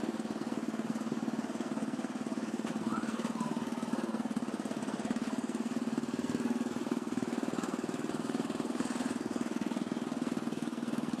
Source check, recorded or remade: remade